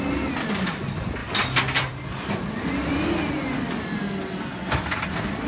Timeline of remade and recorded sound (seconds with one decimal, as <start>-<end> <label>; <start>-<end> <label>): 0.0-1.2 recorded; 1.2-1.9 remade; 1.9-5.5 recorded